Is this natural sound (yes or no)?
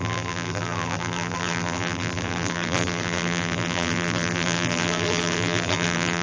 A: no